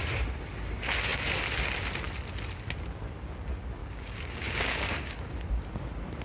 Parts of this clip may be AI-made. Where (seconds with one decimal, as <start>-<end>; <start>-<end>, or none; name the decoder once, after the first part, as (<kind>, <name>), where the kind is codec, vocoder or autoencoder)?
3.8-5.3 (codec, DAC)